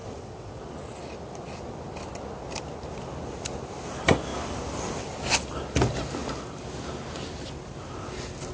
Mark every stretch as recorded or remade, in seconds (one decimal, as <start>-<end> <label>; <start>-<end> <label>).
0.0-0.6 remade; 0.6-8.5 recorded